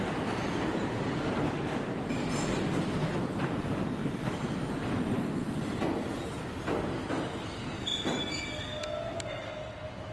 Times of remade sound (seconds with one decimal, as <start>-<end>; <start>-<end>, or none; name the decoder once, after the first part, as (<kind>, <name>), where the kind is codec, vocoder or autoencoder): none